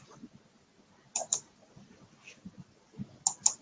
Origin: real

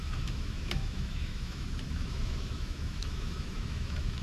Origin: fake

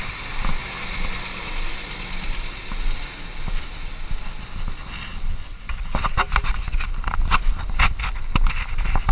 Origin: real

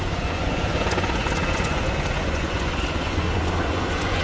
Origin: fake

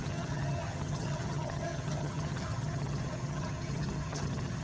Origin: fake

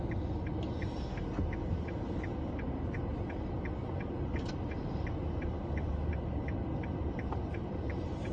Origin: real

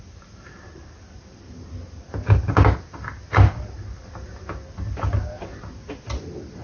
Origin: real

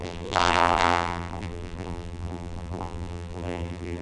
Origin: fake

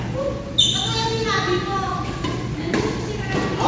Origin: real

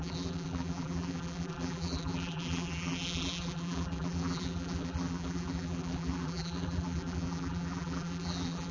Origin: fake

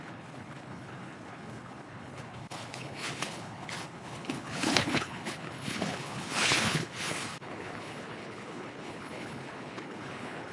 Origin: fake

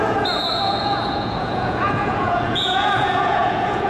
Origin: fake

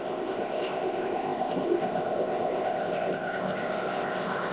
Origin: fake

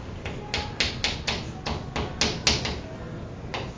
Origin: real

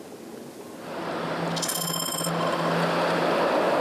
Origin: real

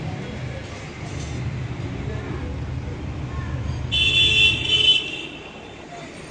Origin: real